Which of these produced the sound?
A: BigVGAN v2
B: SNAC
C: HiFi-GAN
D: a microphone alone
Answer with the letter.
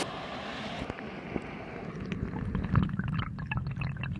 D